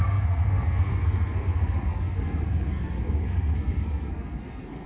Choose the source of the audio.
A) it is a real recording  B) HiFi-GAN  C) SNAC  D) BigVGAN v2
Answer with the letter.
C